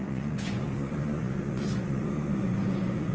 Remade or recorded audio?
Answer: remade